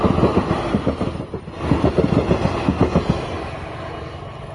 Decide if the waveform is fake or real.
real